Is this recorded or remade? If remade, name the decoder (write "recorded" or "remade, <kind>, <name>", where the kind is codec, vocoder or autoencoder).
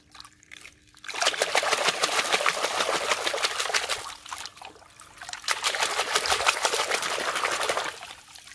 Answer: remade, vocoder, BigVGAN v2